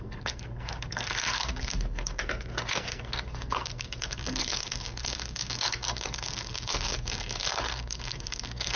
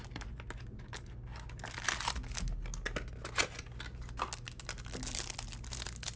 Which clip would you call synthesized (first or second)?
first